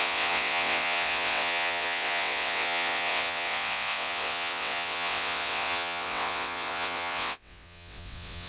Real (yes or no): no